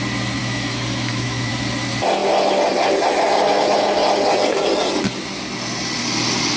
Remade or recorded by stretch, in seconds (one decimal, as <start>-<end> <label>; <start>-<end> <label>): 0.0-0.4 recorded; 0.4-1.5 remade; 1.5-6.6 recorded